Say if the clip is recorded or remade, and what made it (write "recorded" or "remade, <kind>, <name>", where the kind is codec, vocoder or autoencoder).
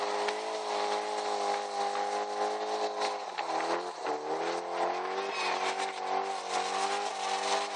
recorded